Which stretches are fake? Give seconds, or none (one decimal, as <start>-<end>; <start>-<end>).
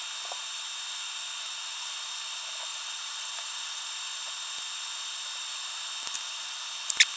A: 2.7-3.9